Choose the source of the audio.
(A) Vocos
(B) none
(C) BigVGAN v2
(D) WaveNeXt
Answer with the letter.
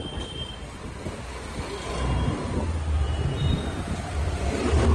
B